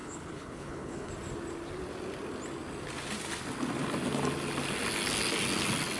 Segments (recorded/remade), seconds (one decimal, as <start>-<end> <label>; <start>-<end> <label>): 0.0-1.1 remade; 1.1-6.0 recorded